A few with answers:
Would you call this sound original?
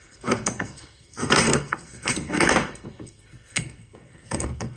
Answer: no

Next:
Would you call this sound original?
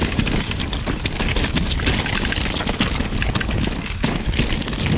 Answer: yes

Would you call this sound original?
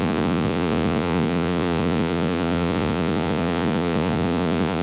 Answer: no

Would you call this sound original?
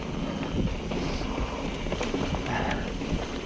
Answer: yes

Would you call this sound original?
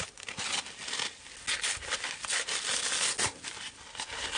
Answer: yes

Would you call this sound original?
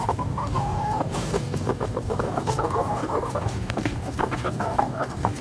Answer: no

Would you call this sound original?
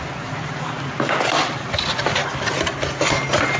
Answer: yes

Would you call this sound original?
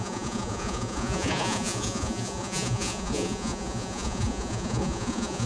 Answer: no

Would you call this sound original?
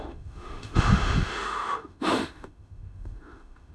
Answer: no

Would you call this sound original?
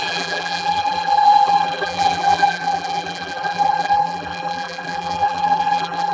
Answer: no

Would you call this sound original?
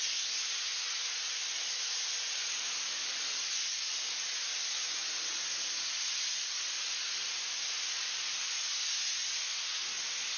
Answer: yes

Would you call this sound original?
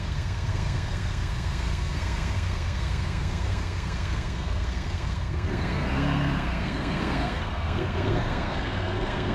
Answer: no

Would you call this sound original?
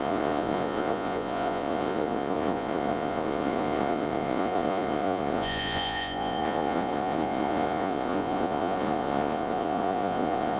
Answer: no